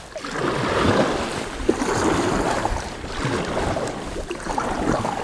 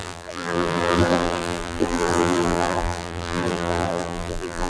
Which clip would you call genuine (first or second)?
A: first